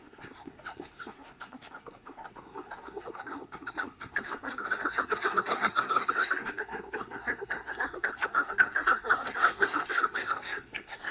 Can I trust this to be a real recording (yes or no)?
no